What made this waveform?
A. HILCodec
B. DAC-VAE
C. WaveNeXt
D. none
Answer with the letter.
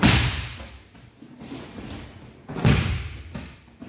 D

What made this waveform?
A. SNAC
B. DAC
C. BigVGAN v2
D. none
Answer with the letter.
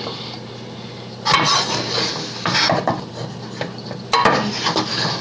D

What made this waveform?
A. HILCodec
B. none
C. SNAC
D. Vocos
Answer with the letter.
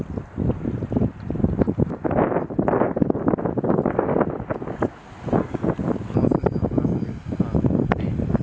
B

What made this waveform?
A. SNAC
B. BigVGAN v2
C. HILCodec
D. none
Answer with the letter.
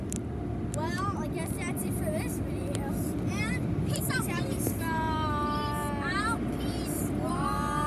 D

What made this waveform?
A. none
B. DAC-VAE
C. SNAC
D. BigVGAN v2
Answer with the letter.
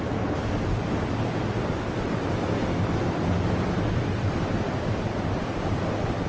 D